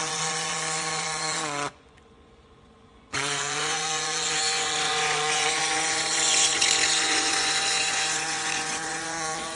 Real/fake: fake